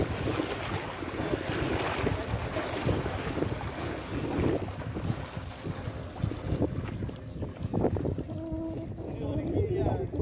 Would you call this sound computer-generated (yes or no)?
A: no